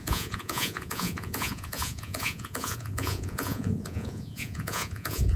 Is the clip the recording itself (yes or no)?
no